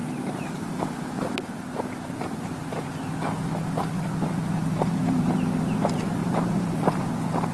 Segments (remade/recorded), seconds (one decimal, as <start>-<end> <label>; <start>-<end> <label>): 0.0-0.8 remade; 0.8-4.7 recorded; 4.7-5.3 remade; 5.3-6.2 recorded; 6.2-6.8 remade; 6.8-7.5 recorded